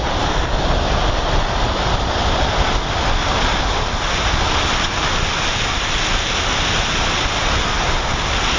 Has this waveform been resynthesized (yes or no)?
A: no